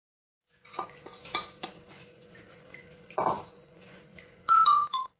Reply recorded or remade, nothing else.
remade